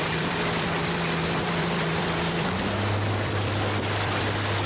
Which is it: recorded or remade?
remade